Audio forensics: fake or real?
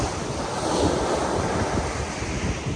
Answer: real